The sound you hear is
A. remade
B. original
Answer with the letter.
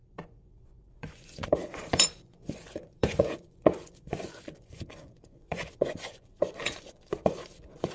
A